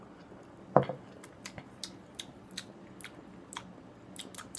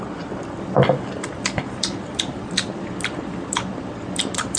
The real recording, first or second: first